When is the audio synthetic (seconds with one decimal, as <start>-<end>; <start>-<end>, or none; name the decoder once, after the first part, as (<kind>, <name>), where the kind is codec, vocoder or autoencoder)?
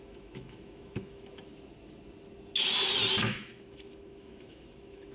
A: 0.0-1.5 (autoencoder, DAC-VAE); 3.2-5.1